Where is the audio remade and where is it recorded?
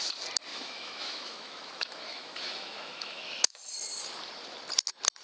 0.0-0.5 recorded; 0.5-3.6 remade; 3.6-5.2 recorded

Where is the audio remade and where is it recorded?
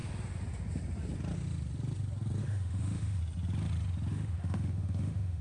0.0-2.4 recorded; 2.4-3.2 remade; 3.2-4.1 recorded; 4.1-5.4 remade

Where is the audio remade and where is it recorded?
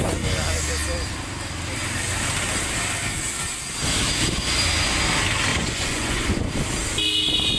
0.0-5.5 recorded; 5.5-6.5 remade; 6.5-7.6 recorded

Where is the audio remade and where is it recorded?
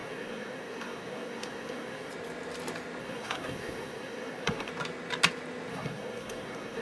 0.0-2.1 remade; 2.1-3.0 recorded; 3.0-4.7 remade; 4.7-5.7 recorded; 5.7-6.8 remade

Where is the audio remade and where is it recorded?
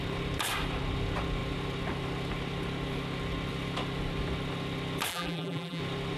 0.0-5.1 recorded; 5.1-5.8 remade; 5.8-6.2 recorded